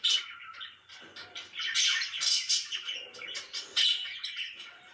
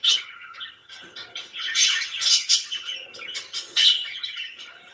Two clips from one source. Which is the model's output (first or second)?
second